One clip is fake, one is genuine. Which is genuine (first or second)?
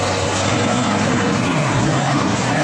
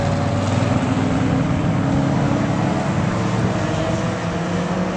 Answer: second